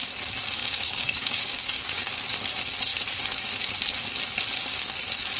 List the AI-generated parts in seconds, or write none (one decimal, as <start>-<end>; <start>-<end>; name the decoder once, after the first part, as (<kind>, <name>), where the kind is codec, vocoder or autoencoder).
0.6-2.2 (codec, DAC)